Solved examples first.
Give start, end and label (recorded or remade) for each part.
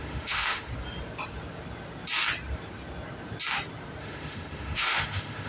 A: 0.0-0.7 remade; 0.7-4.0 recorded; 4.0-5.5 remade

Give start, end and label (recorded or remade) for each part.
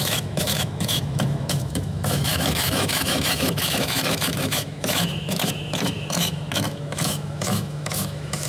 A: 0.0-8.5 remade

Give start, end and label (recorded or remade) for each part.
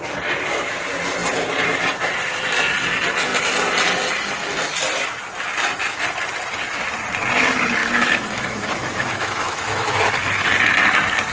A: 0.0-7.8 recorded; 7.8-10.1 remade; 10.1-11.3 recorded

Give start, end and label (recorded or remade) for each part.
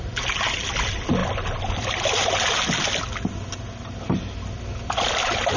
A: 0.0-5.6 recorded